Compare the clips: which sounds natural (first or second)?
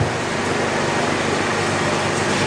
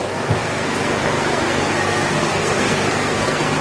first